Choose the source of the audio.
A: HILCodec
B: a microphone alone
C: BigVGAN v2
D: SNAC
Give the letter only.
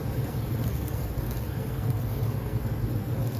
D